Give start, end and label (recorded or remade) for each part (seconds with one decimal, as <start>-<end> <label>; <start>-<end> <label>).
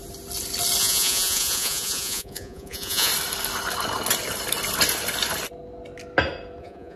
0.0-0.8 recorded; 0.8-3.1 remade; 3.1-6.6 recorded; 6.6-7.0 remade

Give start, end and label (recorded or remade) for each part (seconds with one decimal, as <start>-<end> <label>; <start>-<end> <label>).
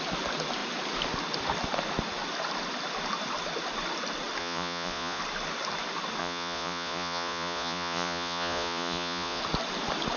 0.0-4.4 recorded; 4.4-5.2 remade; 5.2-6.2 recorded; 6.2-9.4 remade; 9.4-10.2 recorded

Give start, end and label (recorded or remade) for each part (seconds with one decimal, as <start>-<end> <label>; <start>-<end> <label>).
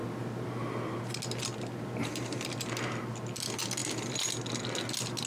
0.0-5.3 recorded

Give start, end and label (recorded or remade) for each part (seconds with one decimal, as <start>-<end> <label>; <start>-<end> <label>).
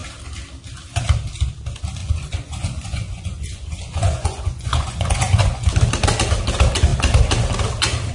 0.0-2.0 recorded; 2.0-5.7 remade; 5.7-8.1 recorded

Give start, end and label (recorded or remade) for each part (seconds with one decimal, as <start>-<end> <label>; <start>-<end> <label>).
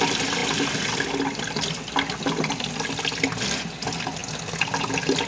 0.0-5.3 recorded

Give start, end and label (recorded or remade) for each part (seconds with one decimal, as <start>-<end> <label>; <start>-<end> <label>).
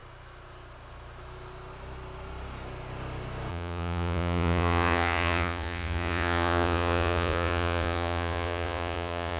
0.0-3.5 recorded; 3.5-9.4 remade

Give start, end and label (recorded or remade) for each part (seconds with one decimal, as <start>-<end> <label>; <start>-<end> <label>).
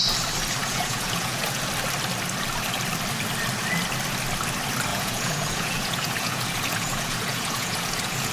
0.0-0.6 recorded; 0.6-1.7 remade; 1.7-4.9 recorded; 4.9-8.3 remade